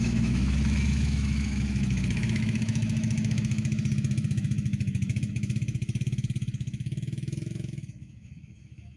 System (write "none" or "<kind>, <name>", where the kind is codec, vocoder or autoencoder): autoencoder, DAC-VAE